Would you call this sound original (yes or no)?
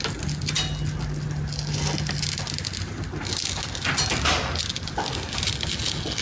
yes